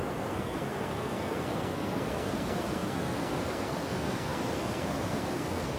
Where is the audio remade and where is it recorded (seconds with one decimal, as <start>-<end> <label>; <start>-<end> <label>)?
0.0-5.8 remade